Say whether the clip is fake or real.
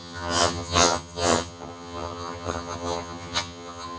fake